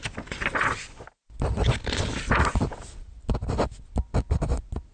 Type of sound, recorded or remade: recorded